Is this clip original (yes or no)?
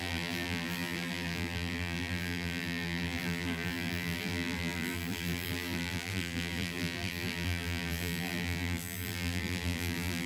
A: no